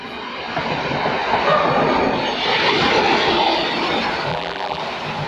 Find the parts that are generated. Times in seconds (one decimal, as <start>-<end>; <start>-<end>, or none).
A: 4.3-4.8